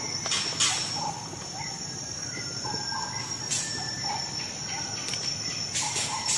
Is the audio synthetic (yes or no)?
no